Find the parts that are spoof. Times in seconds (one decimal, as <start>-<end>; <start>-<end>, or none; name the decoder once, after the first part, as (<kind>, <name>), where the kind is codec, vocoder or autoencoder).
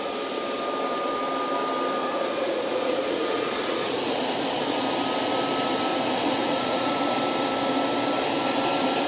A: 2.0-4.4 (vocoder, Vocos); 5.9-6.9